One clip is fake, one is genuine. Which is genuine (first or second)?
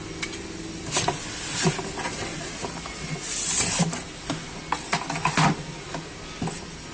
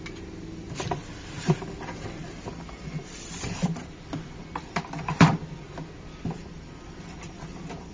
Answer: first